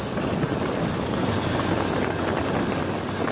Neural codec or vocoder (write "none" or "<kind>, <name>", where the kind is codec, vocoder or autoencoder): none